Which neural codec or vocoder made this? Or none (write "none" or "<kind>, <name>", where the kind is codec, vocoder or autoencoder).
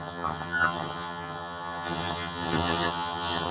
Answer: vocoder, HiFi-GAN